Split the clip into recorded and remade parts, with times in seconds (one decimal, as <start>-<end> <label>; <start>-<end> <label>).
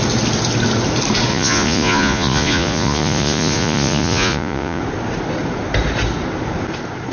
0.0-1.3 recorded; 1.3-4.8 remade; 4.8-7.1 recorded